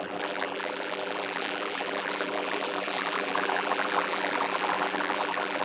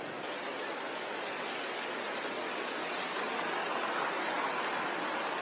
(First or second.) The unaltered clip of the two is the second